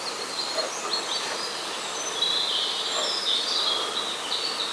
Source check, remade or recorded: recorded